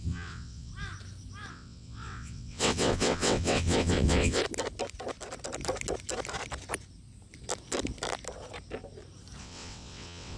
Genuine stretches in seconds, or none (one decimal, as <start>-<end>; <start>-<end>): 0.7-1.5; 4.4-9.4